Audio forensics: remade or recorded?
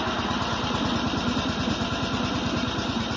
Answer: recorded